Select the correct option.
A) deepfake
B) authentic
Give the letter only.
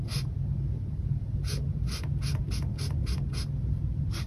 B